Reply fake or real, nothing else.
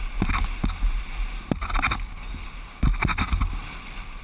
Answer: real